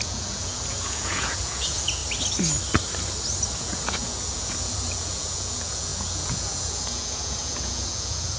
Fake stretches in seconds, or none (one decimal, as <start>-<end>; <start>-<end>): 0.0-2.0; 3.6-8.4

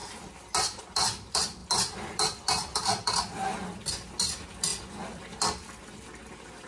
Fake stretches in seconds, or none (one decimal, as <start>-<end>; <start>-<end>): none

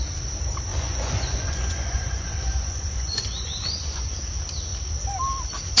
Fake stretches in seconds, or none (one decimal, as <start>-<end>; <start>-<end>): 0.7-4.2

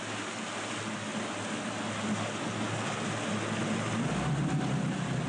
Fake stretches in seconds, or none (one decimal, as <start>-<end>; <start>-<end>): none

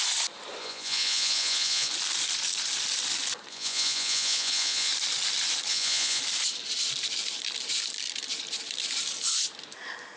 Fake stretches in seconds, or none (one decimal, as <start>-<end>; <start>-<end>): 0.6-1.9; 3.5-4.9; 5.7-6.2

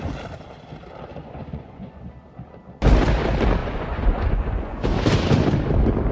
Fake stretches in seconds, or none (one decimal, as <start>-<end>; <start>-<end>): 1.1-2.0; 3.6-4.9

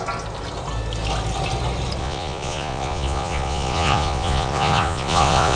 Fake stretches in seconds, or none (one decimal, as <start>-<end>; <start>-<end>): 2.0-5.6